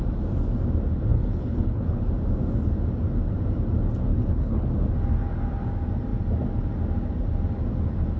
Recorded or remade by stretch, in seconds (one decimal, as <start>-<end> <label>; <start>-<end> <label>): 0.0-1.1 recorded; 1.1-2.0 remade; 2.0-4.1 recorded; 4.1-4.7 remade; 4.7-8.2 recorded